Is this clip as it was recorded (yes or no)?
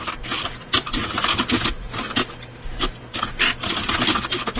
yes